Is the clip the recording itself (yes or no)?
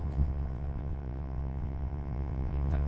no